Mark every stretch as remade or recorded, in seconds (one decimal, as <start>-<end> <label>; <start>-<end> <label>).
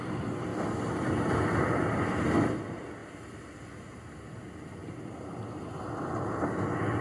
0.0-7.0 recorded